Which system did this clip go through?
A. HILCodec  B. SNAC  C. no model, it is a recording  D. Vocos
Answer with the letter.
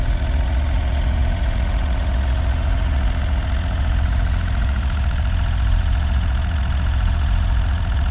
D